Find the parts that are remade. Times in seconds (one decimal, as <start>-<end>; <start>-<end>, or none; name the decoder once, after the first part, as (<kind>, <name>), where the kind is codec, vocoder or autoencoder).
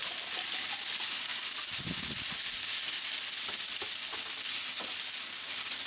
none